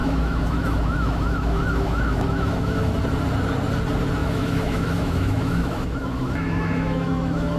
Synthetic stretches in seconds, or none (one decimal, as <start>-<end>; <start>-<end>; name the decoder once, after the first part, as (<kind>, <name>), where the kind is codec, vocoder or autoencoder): 0.0-2.9 (autoencoder, DAC-VAE); 4.2-7.6